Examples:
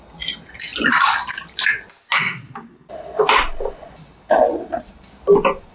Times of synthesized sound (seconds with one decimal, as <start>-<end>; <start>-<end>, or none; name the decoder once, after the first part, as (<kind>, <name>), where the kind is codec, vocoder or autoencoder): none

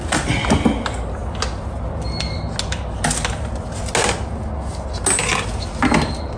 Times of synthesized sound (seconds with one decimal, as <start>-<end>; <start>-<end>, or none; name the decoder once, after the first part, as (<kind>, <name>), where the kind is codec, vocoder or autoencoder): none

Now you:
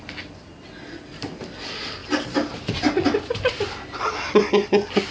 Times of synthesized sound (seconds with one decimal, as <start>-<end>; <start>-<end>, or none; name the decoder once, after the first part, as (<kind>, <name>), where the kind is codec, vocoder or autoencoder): none

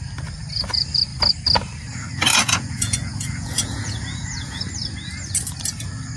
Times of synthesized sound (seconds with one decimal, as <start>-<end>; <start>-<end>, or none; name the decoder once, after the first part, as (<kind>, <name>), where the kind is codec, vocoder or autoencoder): 2.3-4.6 (vocoder, Vocos)

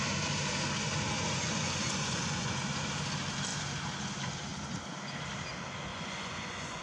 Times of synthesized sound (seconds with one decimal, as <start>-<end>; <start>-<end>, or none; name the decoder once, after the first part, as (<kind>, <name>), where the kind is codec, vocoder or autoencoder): 0.8-2.6 (vocoder, Vocos); 5.9-6.8

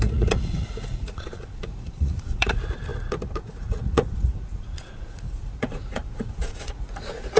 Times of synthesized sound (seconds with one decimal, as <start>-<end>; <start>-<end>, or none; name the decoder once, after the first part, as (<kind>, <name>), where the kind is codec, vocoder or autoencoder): 0.0-7.4 (vocoder, Vocos)